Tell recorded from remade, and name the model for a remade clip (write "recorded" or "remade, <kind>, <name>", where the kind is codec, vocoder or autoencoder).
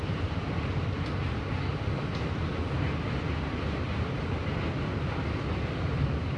recorded